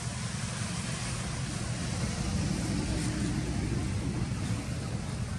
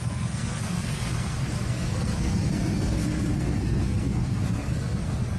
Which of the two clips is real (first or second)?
first